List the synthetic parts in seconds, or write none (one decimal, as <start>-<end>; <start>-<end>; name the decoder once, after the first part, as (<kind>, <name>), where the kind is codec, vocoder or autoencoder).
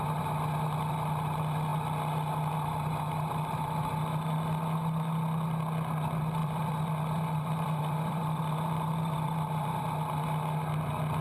6.4-9.8 (vocoder, BigVGAN v2)